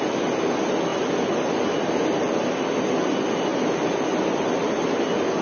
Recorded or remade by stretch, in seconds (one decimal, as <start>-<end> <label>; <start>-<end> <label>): 0.0-5.4 recorded